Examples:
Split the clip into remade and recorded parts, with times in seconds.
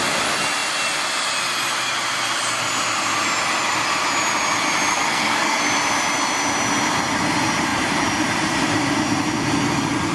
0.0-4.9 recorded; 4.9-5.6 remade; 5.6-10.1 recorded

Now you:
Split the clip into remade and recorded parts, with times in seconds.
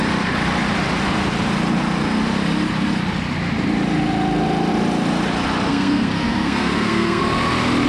0.0-5.7 recorded; 5.7-7.2 remade; 7.2-7.9 recorded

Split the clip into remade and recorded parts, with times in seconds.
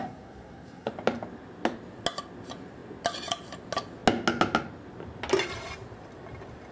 0.0-0.9 remade; 0.9-6.7 recorded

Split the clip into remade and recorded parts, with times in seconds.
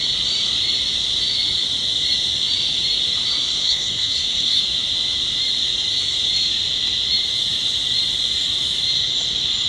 0.0-3.6 recorded; 3.6-4.6 remade; 4.6-9.7 recorded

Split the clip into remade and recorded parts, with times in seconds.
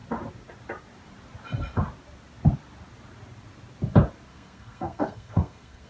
0.0-4.3 recorded; 4.3-5.9 remade